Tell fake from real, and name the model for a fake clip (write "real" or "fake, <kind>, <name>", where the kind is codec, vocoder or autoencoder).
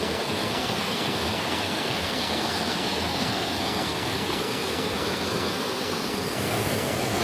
fake, codec, SNAC